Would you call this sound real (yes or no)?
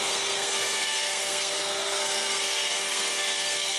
no